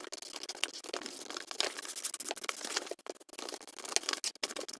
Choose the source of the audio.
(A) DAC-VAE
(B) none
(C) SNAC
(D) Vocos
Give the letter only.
B